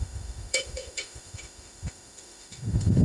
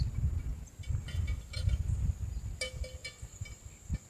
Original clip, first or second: second